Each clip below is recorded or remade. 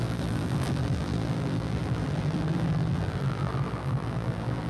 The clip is remade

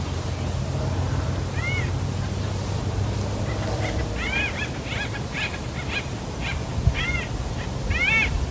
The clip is recorded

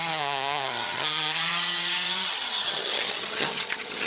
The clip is remade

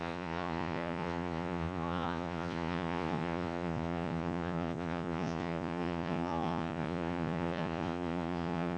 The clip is remade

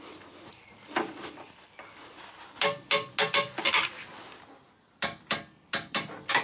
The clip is recorded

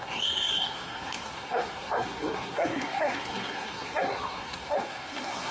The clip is remade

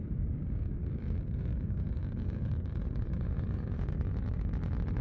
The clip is remade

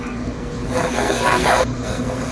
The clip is remade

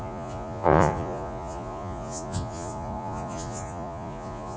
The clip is remade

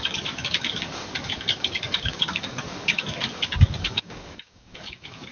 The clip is remade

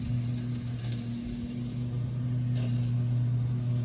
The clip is recorded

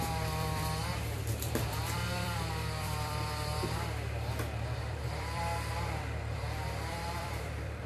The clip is remade